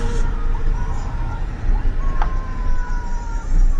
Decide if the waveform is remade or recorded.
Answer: remade